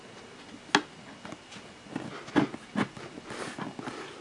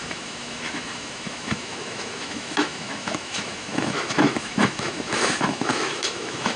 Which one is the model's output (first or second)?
second